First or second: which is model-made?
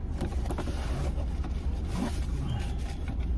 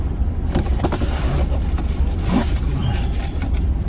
second